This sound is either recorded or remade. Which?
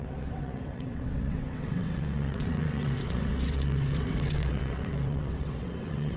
remade